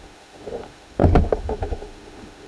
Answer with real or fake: fake